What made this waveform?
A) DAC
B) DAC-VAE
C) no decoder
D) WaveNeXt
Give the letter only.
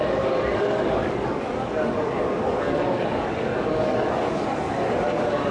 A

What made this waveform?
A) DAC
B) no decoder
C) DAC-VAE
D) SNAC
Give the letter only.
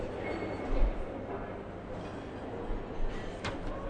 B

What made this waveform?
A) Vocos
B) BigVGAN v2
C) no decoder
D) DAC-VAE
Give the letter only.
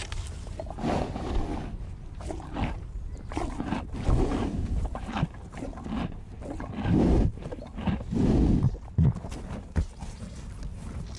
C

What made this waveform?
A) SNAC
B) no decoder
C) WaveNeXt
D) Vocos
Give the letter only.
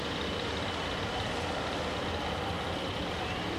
B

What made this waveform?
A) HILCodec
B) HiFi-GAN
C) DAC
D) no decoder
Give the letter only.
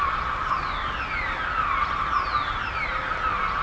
D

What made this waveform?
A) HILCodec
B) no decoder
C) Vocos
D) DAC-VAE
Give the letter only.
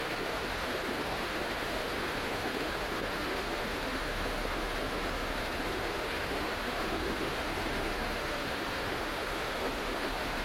D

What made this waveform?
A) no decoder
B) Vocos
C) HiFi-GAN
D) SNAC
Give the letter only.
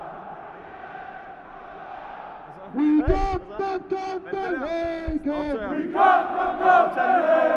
A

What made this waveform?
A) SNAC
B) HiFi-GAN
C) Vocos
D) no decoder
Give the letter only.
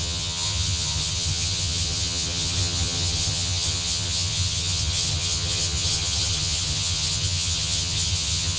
B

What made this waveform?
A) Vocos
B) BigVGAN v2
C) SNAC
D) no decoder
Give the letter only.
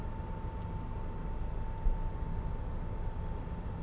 D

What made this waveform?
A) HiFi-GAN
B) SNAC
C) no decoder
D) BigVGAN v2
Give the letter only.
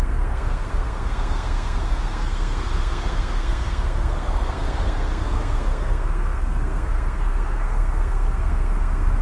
B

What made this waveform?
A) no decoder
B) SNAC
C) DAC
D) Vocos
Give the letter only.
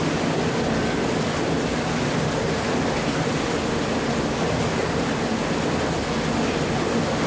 A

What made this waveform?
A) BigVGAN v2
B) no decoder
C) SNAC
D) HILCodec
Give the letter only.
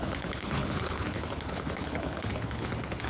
D